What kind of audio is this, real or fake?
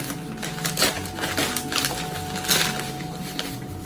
real